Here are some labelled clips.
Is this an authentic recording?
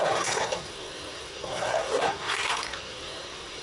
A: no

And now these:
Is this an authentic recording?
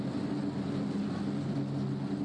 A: yes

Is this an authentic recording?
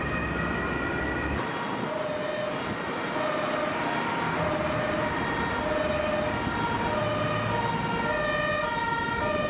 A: yes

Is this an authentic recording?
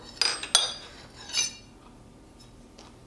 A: yes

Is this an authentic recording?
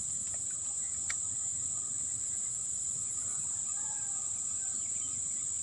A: yes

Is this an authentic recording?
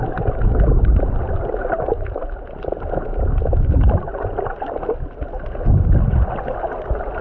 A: yes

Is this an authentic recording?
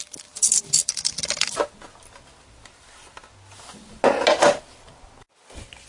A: yes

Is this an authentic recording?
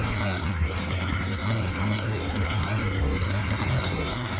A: no